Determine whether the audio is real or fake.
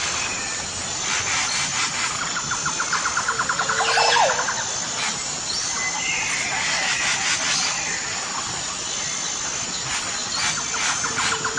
real